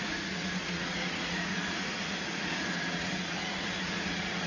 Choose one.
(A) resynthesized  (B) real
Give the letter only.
A